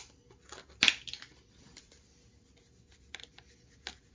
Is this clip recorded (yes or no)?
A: yes